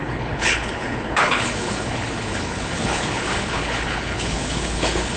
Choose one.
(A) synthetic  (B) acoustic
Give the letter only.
A